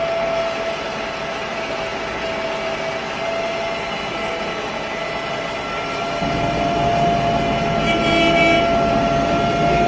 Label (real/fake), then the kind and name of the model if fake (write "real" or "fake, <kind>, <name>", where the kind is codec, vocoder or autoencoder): real